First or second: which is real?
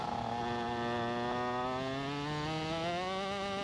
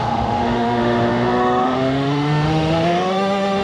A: first